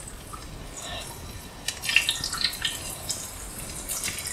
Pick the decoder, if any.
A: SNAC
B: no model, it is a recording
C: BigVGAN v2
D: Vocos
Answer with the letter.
B